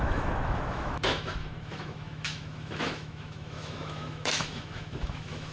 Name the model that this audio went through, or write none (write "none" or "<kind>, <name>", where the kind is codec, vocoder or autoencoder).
autoencoder, DAC-VAE